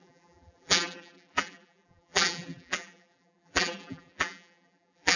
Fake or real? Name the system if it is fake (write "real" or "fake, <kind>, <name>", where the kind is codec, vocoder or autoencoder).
fake, vocoder, BigVGAN v2